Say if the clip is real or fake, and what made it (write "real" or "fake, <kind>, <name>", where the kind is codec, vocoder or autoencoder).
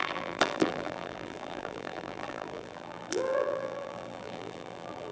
fake, vocoder, BigVGAN v2